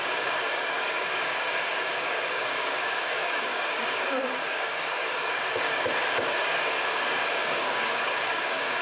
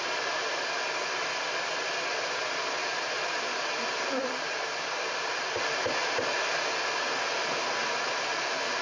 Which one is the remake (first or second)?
first